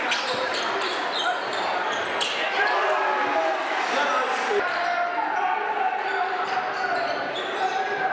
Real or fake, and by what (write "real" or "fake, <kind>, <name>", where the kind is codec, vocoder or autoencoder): real